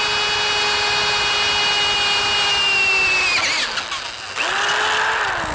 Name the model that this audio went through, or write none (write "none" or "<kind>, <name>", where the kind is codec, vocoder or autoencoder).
none